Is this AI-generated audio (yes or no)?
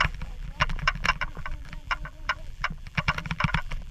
yes